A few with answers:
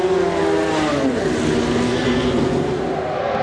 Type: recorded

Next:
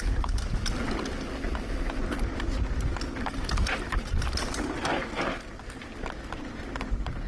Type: recorded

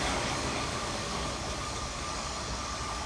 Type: remade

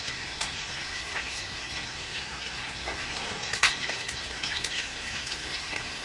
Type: remade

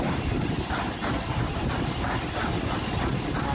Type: recorded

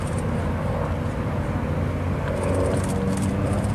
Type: recorded